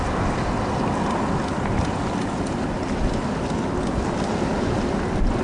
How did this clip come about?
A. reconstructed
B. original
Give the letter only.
B